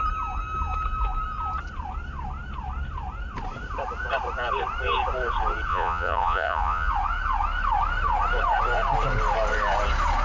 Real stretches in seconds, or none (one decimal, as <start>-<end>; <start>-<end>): 0.0-5.7; 6.9-10.2